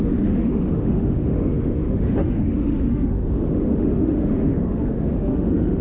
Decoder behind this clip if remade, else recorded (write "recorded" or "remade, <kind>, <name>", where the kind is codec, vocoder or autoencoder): remade, autoencoder, DAC-VAE